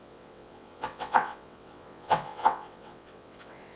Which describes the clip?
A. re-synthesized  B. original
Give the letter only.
A